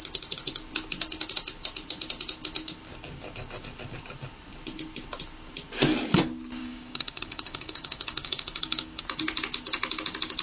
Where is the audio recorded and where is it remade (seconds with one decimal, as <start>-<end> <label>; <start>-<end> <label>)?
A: 0.0-6.6 recorded; 6.6-9.0 remade; 9.0-10.4 recorded